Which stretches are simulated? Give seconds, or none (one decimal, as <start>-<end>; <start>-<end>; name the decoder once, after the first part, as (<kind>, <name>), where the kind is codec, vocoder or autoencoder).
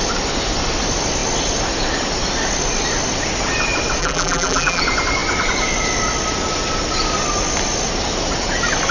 4.0-4.8 (vocoder, BigVGAN v2)